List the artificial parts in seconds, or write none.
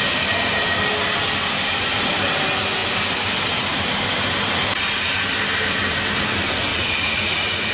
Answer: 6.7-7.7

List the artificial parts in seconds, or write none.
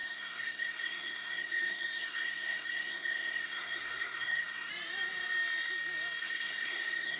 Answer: 0.0-4.7; 6.2-7.2